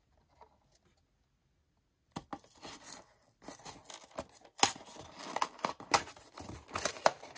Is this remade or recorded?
recorded